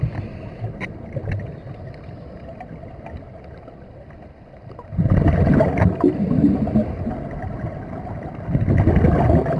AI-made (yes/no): no